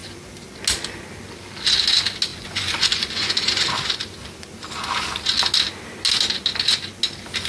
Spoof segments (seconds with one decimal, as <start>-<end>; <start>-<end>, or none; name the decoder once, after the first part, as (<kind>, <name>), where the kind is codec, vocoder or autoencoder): 2.3-3.6 (vocoder, Vocos)

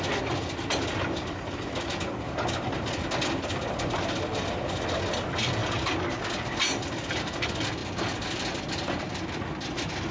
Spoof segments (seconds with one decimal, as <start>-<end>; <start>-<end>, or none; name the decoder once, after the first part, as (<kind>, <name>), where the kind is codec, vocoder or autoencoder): none

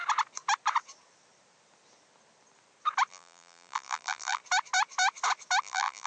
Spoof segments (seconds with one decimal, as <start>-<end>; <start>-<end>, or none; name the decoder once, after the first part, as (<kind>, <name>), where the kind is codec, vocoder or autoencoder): 3.1-4.4 (vocoder, BigVGAN v2); 5.6-6.1

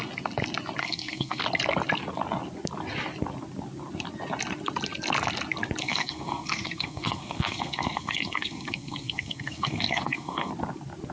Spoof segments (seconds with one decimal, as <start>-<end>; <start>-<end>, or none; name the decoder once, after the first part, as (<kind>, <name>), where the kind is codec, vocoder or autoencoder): 0.8-1.4 (codec, SNAC); 5.8-10.5

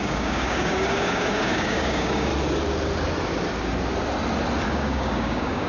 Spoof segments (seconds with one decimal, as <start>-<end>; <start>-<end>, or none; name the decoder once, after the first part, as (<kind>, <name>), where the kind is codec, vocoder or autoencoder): 0.0-2.3 (codec, DAC); 4.7-5.7

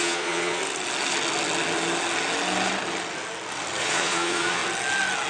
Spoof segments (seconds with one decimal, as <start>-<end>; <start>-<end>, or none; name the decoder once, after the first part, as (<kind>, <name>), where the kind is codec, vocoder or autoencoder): 0.0-0.6 (vocoder, Vocos); 3.8-4.6

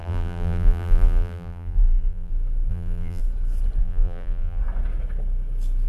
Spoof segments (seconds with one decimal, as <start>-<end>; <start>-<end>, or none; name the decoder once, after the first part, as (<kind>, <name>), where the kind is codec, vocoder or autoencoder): 0.0-2.3 (vocoder, BigVGAN v2); 2.7-3.2; 3.8-4.6